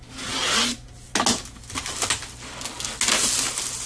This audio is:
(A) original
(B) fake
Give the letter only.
A